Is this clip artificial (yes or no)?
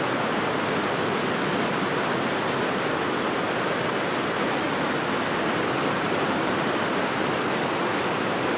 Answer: no